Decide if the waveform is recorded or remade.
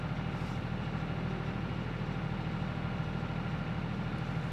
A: recorded